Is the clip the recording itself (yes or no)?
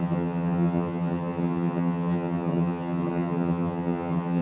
no